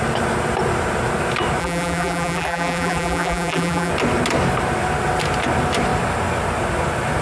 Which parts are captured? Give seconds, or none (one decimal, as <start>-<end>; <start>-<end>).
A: 0.0-1.6; 3.9-7.2